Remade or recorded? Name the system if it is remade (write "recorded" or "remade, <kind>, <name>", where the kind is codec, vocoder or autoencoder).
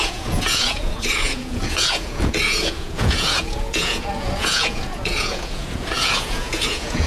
remade, vocoder, Vocos